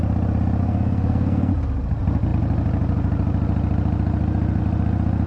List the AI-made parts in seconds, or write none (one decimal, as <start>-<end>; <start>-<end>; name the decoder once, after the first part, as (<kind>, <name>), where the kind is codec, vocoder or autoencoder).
0.6-1.5 (codec, SNAC)